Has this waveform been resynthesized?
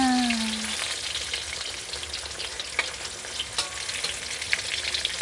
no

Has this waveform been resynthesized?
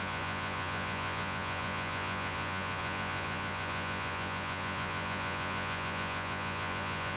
yes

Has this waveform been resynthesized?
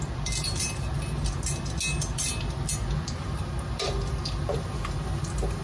no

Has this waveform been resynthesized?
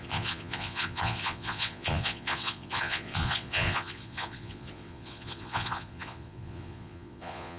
yes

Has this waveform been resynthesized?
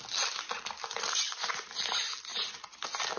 no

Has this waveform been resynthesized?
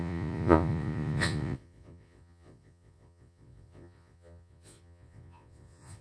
yes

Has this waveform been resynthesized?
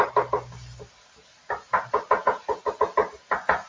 no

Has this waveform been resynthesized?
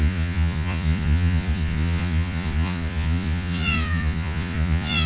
yes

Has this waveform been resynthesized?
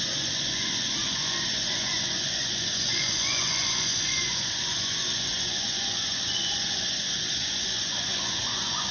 yes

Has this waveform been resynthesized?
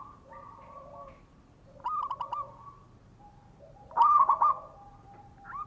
no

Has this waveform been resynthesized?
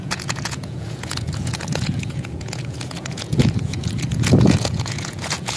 yes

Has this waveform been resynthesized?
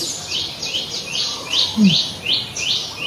no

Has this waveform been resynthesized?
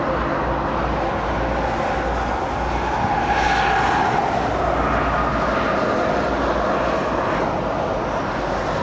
no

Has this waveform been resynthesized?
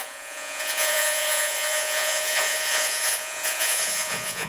yes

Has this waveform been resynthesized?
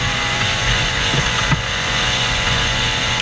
yes